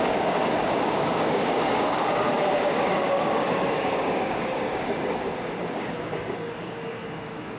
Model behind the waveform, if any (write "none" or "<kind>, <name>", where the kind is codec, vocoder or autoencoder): codec, DAC